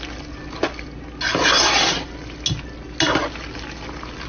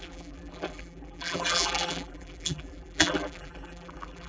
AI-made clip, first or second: second